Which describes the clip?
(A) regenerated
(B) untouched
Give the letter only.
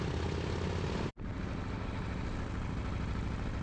B